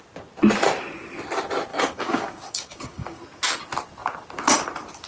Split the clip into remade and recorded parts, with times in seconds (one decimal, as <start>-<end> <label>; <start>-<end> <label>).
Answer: 0.0-1.7 recorded; 1.7-3.2 remade; 3.2-5.1 recorded